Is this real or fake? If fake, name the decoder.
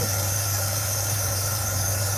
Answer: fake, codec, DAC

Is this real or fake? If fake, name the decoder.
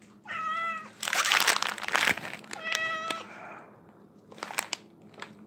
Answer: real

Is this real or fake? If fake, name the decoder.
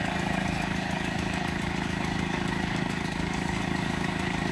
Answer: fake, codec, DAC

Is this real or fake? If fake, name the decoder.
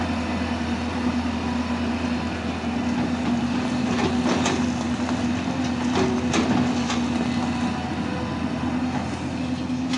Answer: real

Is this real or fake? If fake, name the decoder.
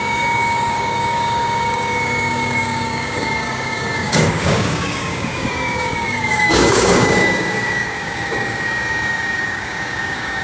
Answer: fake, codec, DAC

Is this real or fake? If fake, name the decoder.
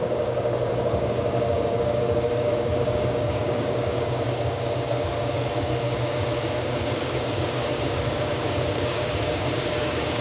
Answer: fake, codec, DAC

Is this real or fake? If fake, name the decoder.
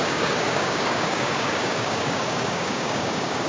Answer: fake, codec, DAC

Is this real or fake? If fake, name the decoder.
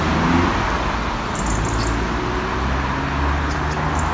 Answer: real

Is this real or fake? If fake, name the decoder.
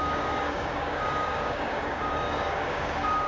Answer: fake, codec, DAC